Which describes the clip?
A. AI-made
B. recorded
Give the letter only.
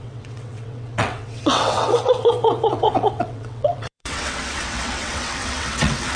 A